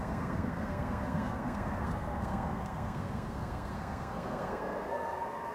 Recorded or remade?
remade